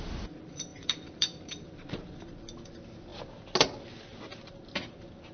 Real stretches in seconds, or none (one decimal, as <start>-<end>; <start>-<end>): 0.0-0.7; 2.1-5.3